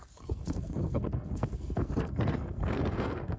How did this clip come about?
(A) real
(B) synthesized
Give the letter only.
B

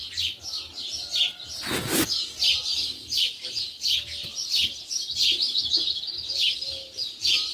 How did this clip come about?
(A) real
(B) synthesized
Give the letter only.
A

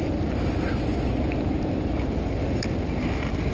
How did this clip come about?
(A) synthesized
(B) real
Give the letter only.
B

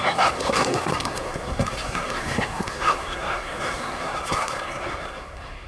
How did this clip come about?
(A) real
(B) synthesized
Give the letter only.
B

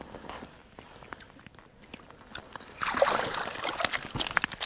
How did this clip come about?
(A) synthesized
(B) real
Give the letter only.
B